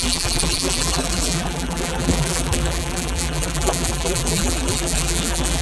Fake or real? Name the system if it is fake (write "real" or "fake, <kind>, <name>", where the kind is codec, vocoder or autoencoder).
fake, vocoder, BigVGAN v2